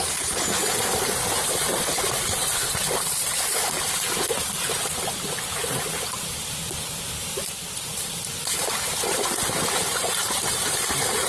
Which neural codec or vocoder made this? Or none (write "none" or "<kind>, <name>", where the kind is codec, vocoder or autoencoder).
vocoder, BigVGAN v2